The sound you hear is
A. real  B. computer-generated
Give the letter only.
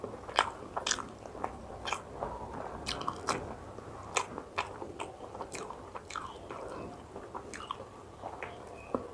A